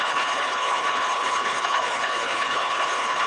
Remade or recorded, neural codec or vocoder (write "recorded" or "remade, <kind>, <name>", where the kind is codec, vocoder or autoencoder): remade, codec, HILCodec